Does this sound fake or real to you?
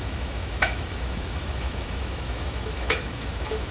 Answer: fake